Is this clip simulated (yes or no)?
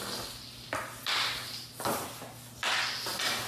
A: no